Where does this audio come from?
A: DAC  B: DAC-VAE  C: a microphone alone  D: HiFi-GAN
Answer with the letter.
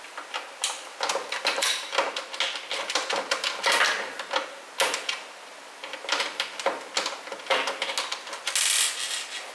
C